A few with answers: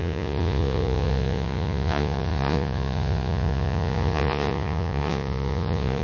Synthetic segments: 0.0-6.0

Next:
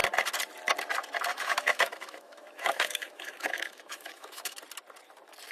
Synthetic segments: 1.3-4.6

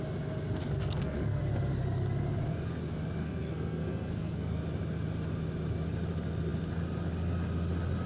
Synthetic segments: 0.6-1.4; 3.2-4.6

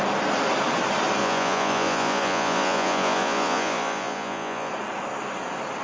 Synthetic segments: 1.2-4.7

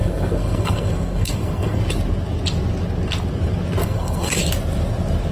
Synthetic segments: 0.0-1.8; 3.8-4.4

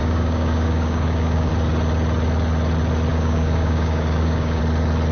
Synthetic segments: 0.0-1.5; 3.1-4.6